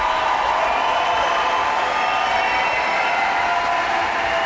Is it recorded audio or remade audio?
recorded